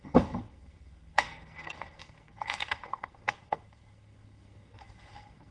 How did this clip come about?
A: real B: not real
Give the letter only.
B